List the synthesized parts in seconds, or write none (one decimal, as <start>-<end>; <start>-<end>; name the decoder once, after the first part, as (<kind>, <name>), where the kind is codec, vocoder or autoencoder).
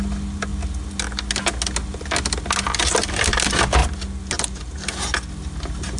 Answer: none